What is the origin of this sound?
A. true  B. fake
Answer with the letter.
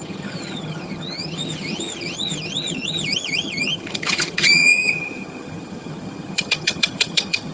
B